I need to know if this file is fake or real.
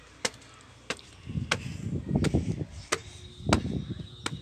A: real